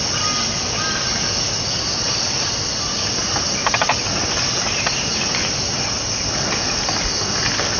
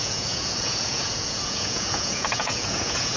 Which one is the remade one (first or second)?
second